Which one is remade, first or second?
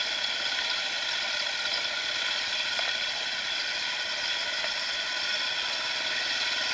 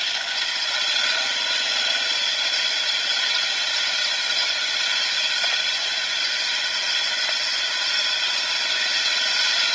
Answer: second